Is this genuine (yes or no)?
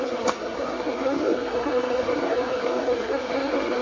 no